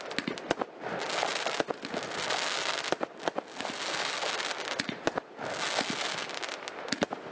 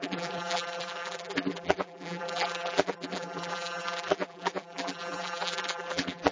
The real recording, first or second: first